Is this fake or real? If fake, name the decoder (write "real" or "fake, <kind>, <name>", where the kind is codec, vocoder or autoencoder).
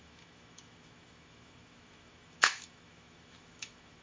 fake, autoencoder, DAC-VAE